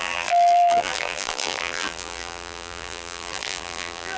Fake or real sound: fake